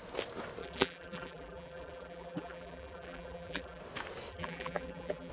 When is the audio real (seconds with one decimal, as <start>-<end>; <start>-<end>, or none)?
0.0-0.6; 3.8-4.3